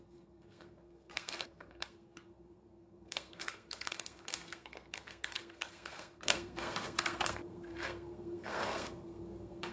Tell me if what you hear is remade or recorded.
remade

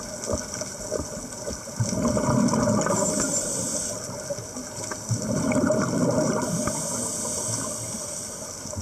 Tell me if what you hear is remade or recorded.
recorded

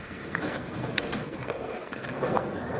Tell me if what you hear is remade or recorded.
remade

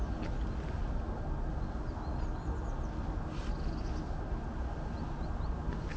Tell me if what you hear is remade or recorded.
recorded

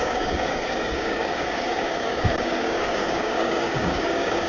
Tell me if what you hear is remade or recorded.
remade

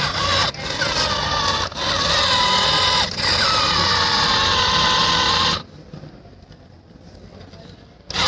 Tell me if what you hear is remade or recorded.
recorded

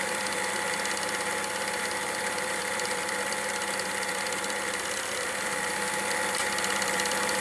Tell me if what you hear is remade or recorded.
remade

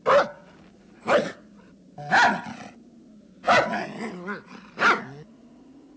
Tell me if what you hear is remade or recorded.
recorded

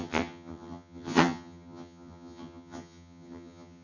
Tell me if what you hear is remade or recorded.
remade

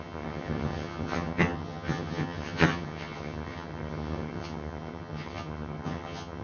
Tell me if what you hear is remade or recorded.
remade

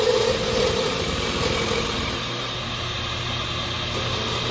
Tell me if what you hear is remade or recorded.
remade